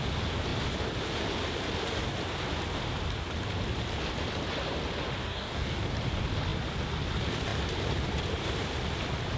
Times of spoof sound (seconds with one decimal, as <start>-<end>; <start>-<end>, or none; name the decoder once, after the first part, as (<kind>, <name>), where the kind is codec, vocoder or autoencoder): 5.2-5.9 (codec, DAC)